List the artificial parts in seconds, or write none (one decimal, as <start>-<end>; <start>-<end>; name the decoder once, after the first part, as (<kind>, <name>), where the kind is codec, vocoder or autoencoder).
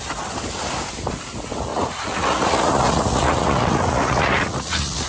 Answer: 1.7-5.1 (vocoder, Vocos)